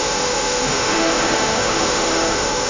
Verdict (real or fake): fake